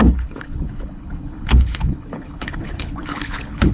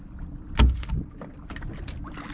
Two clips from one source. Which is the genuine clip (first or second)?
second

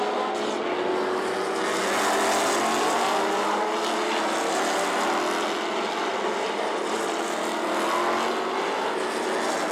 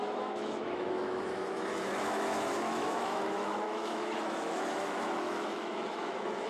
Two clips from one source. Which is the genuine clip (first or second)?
first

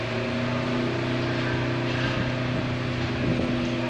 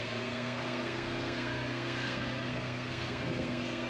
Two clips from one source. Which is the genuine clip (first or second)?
first